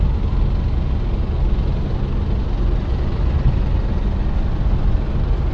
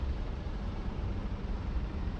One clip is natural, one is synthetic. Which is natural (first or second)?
first